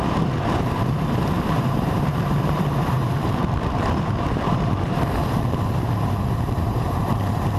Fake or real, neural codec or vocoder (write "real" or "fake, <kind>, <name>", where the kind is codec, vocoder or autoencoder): fake, vocoder, BigVGAN v2